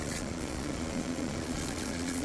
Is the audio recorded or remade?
remade